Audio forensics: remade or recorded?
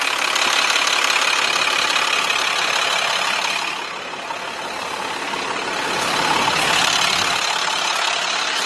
recorded